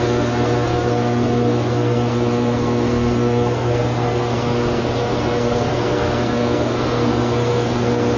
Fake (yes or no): yes